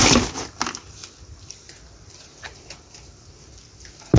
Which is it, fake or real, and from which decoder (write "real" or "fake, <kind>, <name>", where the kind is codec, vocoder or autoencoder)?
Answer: real